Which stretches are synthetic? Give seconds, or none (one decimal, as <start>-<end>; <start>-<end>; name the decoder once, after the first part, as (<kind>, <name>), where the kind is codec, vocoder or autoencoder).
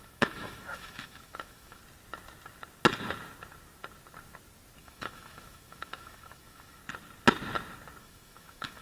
0.0-1.8 (autoencoder, DAC-VAE); 4.8-6.8; 8.0-8.8